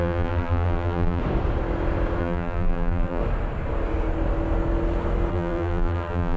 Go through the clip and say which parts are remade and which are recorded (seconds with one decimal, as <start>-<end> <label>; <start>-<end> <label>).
0.0-1.2 remade; 1.2-2.2 recorded; 2.2-3.2 remade; 3.2-5.3 recorded; 5.3-6.4 remade

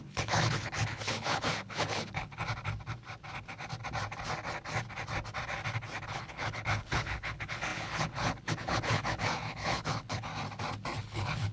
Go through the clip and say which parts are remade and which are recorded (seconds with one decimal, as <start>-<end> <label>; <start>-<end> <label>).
0.0-2.3 remade; 2.3-6.1 recorded; 6.1-10.3 remade; 10.3-11.0 recorded; 11.0-11.5 remade

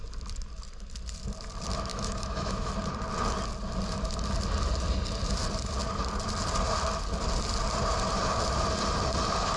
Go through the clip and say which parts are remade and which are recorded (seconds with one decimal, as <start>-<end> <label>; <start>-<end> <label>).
0.0-1.9 recorded; 1.9-2.7 remade; 2.7-9.6 recorded

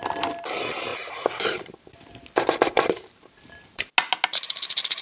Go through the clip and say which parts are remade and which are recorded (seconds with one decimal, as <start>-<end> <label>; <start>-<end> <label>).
0.0-0.9 recorded; 0.9-3.9 remade; 3.9-4.3 recorded; 4.3-5.0 remade

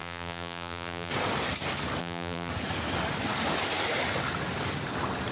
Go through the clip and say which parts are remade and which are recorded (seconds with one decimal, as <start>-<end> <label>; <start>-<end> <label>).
0.0-1.1 remade; 1.1-2.0 recorded; 2.0-2.5 remade; 2.5-5.3 recorded

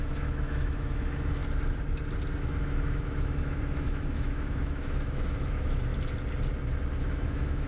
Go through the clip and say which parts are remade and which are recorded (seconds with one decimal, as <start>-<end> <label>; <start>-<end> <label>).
0.0-1.4 remade; 1.4-2.4 recorded; 2.4-5.9 remade; 5.9-7.0 recorded; 7.0-7.7 remade

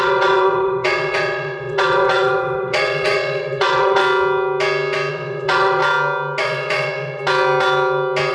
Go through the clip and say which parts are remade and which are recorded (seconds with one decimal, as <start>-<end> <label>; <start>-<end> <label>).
0.0-4.0 remade; 4.0-5.1 recorded; 5.1-5.8 remade; 5.8-6.4 recorded; 6.4-7.2 remade; 7.2-8.3 recorded